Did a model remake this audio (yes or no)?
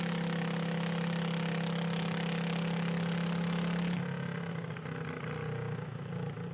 no